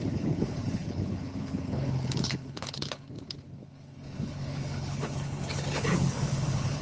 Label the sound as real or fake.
fake